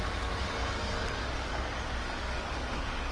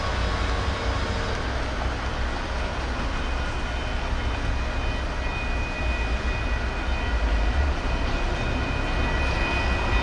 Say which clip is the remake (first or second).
first